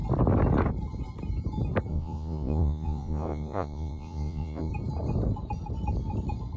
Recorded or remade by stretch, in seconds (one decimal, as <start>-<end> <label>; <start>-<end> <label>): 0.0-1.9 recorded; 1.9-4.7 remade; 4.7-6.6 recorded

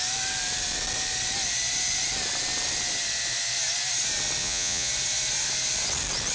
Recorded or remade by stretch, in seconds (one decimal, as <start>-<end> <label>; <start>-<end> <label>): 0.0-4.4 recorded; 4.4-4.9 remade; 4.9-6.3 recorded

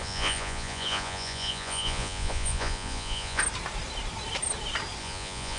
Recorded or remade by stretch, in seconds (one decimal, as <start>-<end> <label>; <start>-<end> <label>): 0.0-3.4 remade; 3.4-5.0 recorded; 5.0-5.6 remade

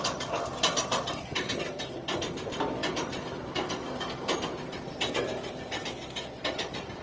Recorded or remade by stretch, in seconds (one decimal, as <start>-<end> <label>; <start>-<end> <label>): 0.0-7.0 recorded

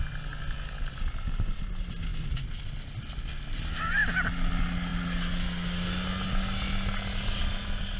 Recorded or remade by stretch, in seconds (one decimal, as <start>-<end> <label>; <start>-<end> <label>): 0.0-8.0 recorded

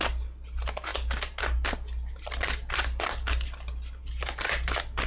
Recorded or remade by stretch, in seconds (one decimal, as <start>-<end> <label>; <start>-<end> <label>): 0.0-5.1 recorded